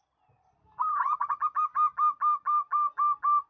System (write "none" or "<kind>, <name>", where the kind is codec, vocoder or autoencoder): none